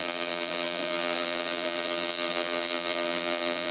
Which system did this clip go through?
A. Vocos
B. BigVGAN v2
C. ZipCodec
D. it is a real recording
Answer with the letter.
B